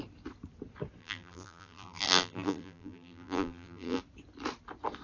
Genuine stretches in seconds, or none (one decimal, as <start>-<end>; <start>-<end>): 0.0-1.0; 4.0-5.0